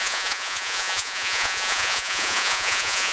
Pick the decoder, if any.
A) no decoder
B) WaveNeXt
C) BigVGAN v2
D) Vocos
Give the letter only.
D